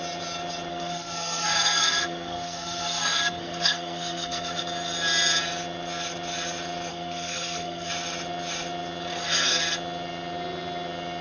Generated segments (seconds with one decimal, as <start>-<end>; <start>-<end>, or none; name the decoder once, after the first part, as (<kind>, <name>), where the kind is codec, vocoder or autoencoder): 0.7-4.6 (codec, SNAC); 6.9-7.9; 9.1-9.6